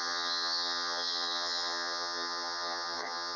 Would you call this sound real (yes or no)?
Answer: no